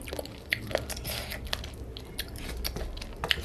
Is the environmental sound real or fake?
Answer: real